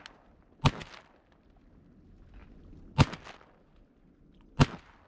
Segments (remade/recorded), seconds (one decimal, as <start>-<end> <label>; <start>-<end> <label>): 0.0-5.1 recorded